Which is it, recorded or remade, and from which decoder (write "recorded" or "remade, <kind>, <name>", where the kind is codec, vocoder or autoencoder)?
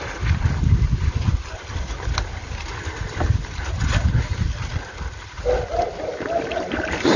recorded